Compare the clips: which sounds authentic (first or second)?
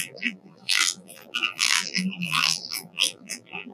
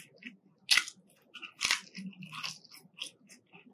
second